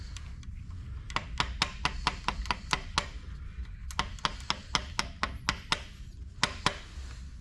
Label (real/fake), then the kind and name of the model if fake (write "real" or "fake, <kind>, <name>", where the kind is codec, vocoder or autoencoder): real